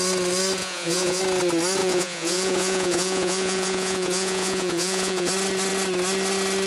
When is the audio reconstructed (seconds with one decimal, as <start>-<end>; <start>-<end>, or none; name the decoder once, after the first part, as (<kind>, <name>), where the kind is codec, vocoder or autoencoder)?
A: 0.6-1.2 (vocoder, Vocos); 1.8-5.3